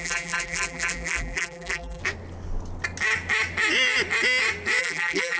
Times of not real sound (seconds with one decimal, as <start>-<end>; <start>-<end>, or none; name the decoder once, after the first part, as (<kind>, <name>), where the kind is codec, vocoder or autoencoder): 0.0-2.0 (vocoder, BigVGAN v2); 4.8-5.4